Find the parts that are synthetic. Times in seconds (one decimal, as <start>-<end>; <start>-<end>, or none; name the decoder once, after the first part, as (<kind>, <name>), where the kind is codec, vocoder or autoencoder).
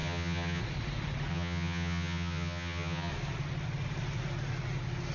0.0-0.6 (vocoder, HiFi-GAN); 1.3-3.1